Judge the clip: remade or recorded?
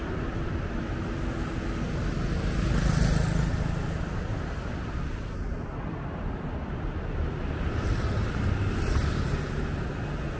recorded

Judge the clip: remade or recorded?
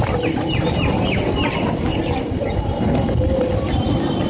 recorded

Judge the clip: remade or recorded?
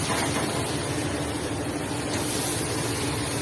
recorded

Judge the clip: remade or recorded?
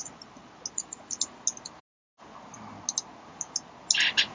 recorded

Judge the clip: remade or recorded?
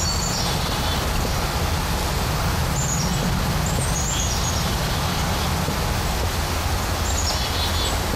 recorded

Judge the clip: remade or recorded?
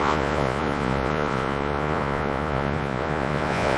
remade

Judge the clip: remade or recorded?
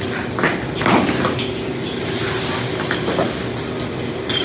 recorded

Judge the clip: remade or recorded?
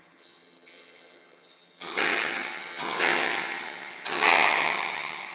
remade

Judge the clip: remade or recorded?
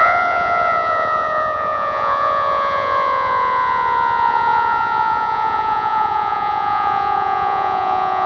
remade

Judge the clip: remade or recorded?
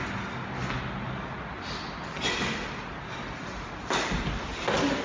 recorded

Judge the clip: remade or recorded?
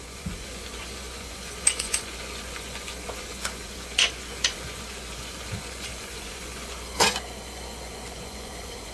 remade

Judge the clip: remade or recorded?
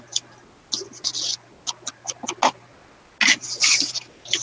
recorded